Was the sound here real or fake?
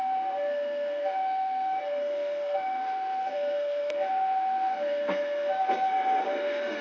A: fake